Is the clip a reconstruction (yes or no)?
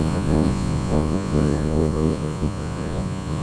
yes